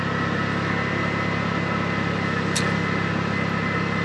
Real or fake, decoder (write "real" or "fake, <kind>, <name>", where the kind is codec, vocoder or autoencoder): real